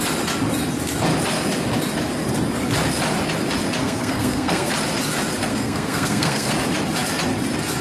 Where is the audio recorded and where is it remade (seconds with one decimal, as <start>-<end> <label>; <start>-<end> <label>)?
0.0-3.8 recorded; 3.8-4.7 remade; 4.7-5.5 recorded; 5.5-6.5 remade; 6.5-7.8 recorded